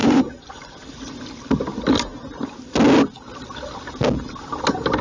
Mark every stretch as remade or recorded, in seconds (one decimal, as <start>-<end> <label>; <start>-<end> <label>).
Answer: 0.0-0.7 remade; 0.7-5.0 recorded